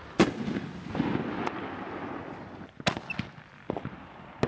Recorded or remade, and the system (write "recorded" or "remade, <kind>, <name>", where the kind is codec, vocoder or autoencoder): recorded